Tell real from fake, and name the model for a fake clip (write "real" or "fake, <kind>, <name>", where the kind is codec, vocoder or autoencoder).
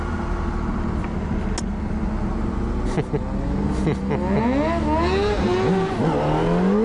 real